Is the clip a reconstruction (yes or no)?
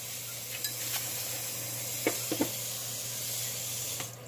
no